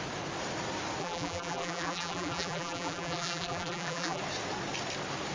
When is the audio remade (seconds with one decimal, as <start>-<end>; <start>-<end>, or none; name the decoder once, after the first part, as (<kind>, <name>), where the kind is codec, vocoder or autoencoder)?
1.0-4.2 (vocoder, BigVGAN v2)